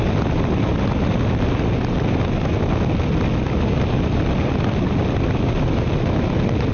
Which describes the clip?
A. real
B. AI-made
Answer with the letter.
A